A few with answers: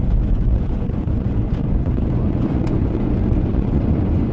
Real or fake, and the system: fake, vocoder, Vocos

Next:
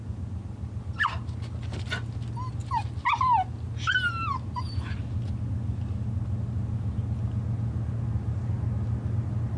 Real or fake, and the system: real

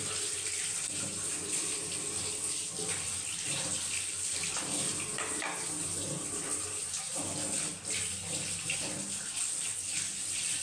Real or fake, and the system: real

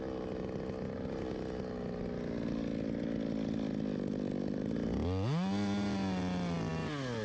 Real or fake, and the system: real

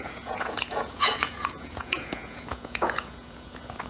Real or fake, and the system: fake, vocoder, Vocos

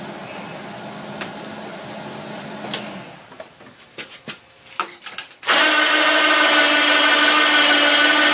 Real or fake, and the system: real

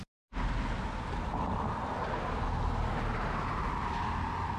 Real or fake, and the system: real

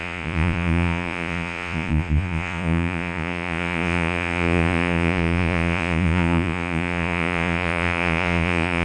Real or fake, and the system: fake, vocoder, Vocos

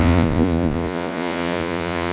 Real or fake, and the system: fake, vocoder, Vocos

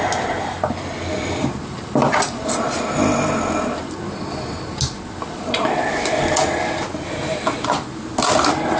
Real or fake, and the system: real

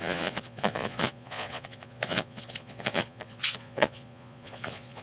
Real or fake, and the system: fake, vocoder, Vocos